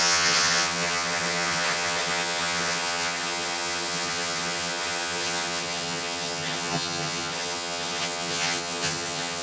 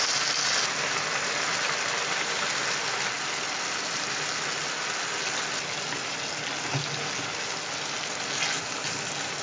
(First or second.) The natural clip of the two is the second